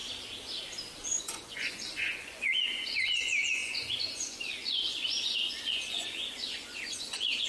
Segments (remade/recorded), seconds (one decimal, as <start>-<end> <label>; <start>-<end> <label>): 0.0-1.2 recorded; 1.2-7.5 remade